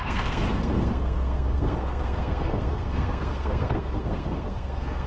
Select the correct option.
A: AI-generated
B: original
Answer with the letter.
A